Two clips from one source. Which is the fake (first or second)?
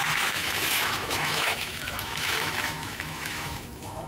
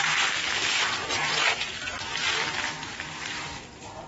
first